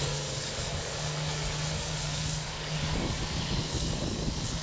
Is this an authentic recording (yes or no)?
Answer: no